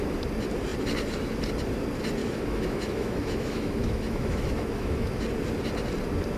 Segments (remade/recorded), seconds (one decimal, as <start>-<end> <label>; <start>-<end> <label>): 0.0-2.2 recorded; 2.2-5.1 remade; 5.1-6.4 recorded